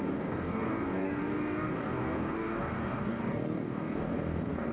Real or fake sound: fake